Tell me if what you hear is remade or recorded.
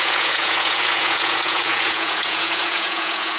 remade